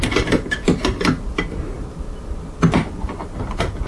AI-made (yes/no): no